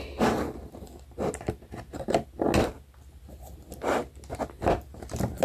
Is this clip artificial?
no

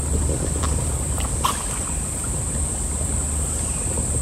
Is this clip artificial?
no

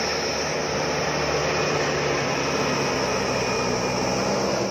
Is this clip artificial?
no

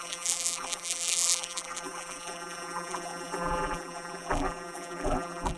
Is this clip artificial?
yes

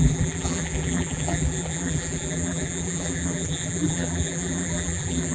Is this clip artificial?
yes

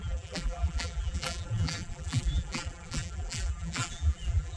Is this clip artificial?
yes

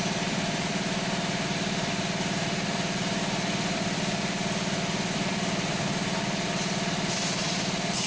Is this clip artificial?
yes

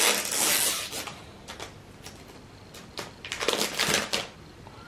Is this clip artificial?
no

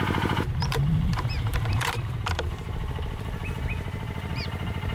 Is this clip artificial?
yes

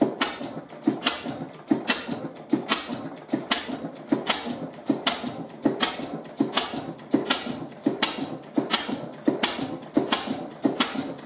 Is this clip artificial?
no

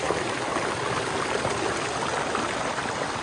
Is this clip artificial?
no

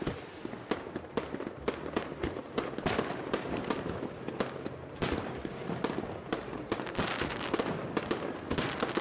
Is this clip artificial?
no